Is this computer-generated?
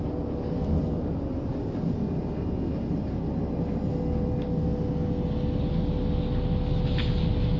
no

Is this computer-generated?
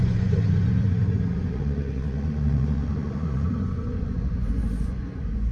yes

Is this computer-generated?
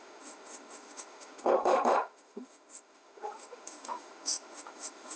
yes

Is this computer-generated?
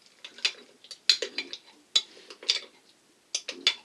no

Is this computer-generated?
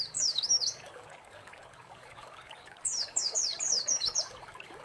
yes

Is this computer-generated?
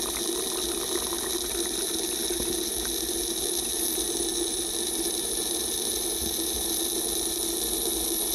no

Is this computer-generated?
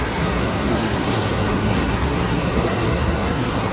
yes